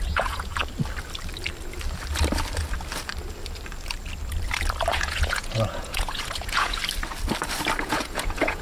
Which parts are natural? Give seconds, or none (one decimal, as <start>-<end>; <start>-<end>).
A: 0.6-4.9; 6.8-7.8